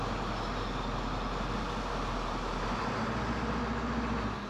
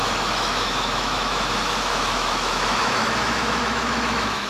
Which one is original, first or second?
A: first